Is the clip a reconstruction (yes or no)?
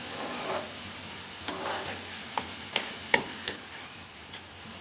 no